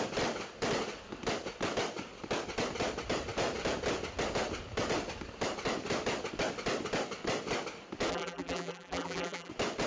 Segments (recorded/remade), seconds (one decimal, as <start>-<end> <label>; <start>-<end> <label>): 0.0-8.1 recorded; 8.1-9.5 remade; 9.5-9.9 recorded